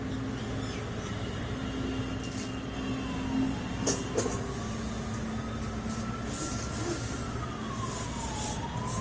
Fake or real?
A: real